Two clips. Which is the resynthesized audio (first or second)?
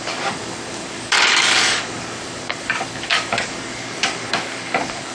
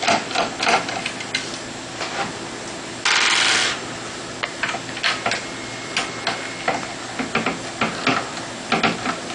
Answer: first